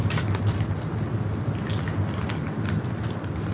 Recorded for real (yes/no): yes